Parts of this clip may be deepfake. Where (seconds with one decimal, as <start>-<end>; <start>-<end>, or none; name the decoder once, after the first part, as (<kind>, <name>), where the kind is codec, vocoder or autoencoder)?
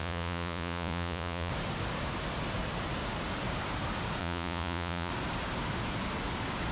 0.0-1.5 (vocoder, Vocos); 4.2-5.1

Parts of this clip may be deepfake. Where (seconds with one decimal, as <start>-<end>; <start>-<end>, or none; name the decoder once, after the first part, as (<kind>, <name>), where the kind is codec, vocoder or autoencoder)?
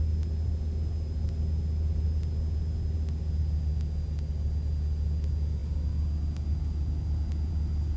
none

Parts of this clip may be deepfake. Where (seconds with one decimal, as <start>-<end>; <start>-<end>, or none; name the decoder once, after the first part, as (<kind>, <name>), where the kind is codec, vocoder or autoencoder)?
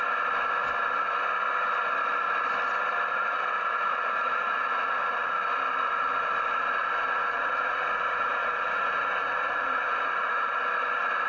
3.1-5.4 (vocoder, Vocos); 6.8-10.6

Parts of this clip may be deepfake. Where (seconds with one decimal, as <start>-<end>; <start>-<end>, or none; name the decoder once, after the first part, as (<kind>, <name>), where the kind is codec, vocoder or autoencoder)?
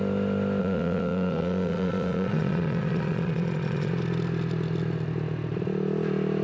0.6-3.9 (vocoder, Vocos)